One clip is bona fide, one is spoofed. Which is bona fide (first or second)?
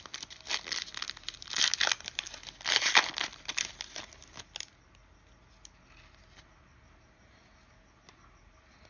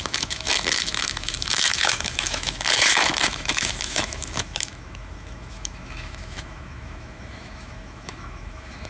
first